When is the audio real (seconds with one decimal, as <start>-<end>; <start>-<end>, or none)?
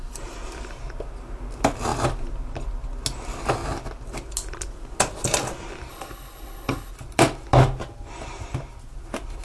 0.0-5.9; 6.9-9.4